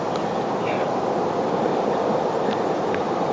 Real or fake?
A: real